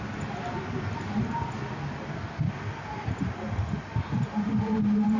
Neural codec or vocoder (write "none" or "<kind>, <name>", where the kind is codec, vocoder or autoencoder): none